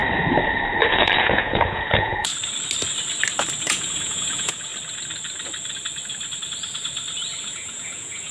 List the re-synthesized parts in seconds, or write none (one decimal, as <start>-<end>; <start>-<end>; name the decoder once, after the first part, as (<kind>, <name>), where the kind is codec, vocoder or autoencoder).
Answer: 0.9-2.3 (vocoder, Vocos); 3.6-4.7; 7.4-8.3